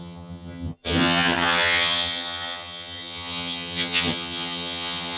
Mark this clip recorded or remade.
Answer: remade